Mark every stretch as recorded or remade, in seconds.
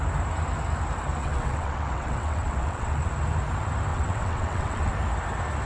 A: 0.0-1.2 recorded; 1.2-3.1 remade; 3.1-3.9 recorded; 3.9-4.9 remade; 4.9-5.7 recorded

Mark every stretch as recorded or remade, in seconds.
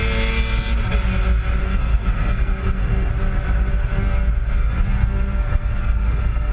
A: 0.0-1.6 recorded; 1.6-3.1 remade; 3.1-3.7 recorded; 3.7-6.5 remade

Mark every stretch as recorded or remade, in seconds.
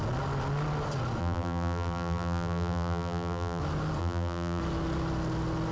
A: 0.0-1.2 recorded; 1.2-3.6 remade; 3.6-4.0 recorded; 4.0-4.6 remade; 4.6-5.7 recorded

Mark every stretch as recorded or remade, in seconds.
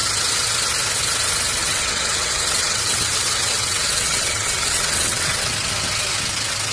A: 0.0-1.6 recorded; 1.6-5.5 remade; 5.5-6.7 recorded